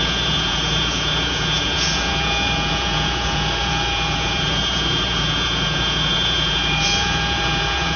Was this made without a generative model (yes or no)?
no